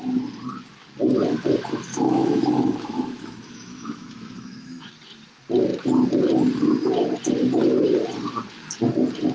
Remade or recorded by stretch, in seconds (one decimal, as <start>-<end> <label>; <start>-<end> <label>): 0.0-1.9 recorded; 1.9-4.9 remade; 4.9-9.3 recorded